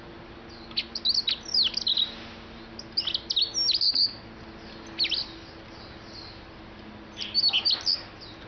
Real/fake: real